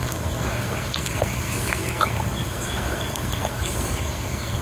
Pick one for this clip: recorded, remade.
remade